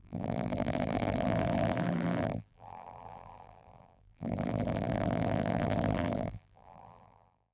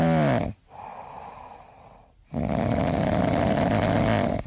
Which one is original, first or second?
second